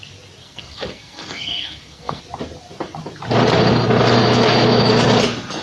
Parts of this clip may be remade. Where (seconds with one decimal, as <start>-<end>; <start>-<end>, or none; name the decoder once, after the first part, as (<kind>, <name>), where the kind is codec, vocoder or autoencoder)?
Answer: 0.4-2.2 (codec, SNAC)